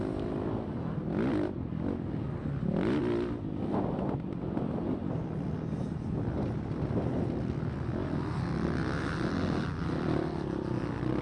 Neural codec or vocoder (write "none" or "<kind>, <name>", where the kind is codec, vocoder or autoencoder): none